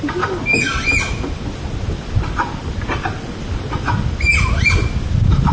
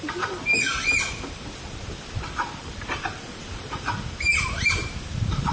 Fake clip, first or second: second